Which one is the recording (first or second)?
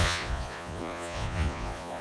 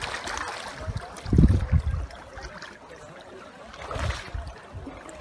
second